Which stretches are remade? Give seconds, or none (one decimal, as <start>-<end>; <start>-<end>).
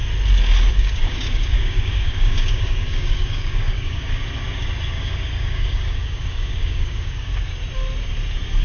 0.7-4.2; 4.9-7.5